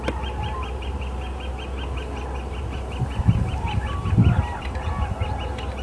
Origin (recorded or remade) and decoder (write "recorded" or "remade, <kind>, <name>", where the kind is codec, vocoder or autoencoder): recorded